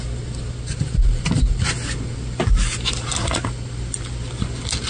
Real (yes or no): yes